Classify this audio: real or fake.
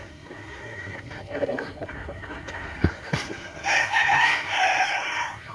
fake